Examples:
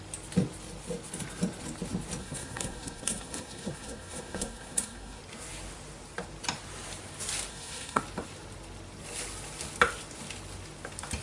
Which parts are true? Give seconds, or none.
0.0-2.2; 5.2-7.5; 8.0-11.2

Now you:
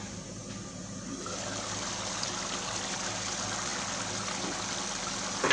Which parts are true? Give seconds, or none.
0.0-5.5

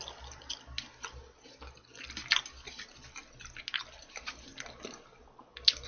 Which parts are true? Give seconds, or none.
0.0-5.9

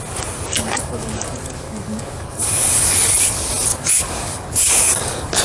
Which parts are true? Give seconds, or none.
0.0-0.5; 2.9-3.7

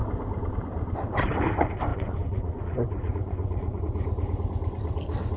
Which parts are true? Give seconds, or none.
0.0-1.9; 3.8-5.4

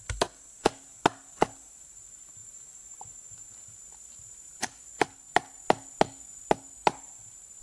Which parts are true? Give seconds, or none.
0.0-7.6

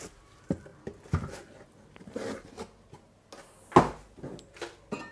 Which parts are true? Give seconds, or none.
0.0-5.1